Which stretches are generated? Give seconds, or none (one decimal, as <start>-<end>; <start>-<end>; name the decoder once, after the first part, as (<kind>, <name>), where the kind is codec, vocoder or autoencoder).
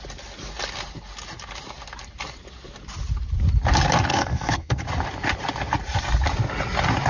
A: 4.1-4.8 (codec, SNAC)